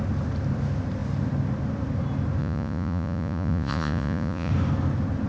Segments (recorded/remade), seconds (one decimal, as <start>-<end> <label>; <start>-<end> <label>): 0.0-2.4 recorded; 2.4-4.5 remade; 4.5-5.3 recorded